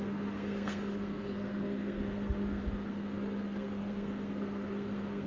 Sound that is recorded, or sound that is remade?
remade